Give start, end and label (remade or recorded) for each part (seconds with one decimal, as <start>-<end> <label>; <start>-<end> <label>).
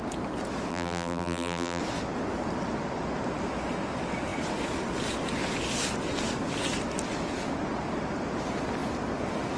0.0-0.7 recorded; 0.7-1.8 remade; 1.8-9.6 recorded